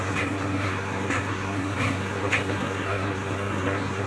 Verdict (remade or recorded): remade